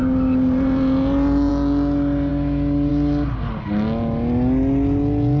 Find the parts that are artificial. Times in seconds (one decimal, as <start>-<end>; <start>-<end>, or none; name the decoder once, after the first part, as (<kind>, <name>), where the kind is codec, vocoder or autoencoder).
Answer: none